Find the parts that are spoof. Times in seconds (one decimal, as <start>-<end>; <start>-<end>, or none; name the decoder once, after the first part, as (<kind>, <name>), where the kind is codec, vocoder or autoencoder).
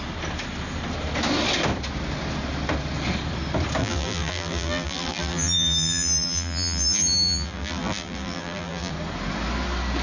3.8-8.9 (vocoder, BigVGAN v2)